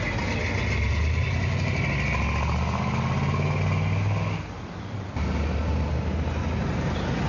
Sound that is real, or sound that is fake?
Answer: real